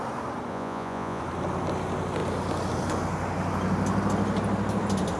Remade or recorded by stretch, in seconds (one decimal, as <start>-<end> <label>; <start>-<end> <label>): 0.0-0.5 recorded; 0.5-1.2 remade; 1.2-5.2 recorded